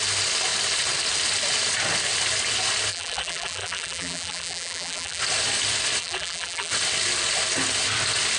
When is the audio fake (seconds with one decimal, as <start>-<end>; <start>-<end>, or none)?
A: 2.9-5.2; 6.0-6.7